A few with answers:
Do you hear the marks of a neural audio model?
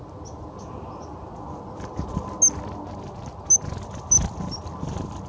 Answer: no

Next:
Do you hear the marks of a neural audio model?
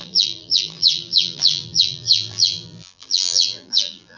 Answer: yes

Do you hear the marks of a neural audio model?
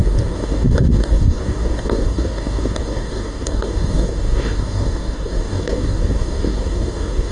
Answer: yes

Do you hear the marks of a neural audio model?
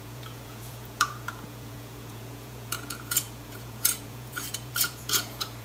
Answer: yes